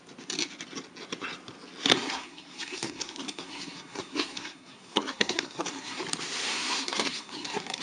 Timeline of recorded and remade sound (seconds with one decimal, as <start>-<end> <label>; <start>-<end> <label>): 0.0-1.9 recorded; 1.9-6.0 remade; 6.0-6.5 recorded; 6.5-7.8 remade